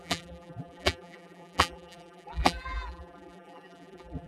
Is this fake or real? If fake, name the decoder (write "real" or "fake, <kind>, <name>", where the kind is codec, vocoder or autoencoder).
fake, vocoder, BigVGAN v2